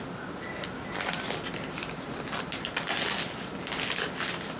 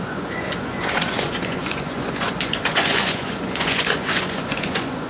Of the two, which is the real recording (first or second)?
first